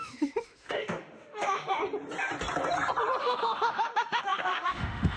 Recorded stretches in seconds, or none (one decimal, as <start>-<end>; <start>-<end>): 1.8-3.2